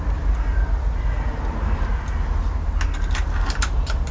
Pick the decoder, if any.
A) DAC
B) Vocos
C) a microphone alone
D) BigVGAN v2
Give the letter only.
C